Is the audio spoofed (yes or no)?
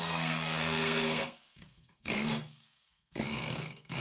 yes